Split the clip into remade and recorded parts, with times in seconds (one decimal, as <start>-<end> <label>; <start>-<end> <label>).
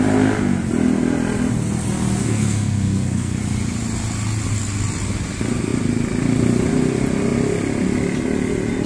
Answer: 0.0-2.2 recorded; 2.2-3.4 remade; 3.4-8.9 recorded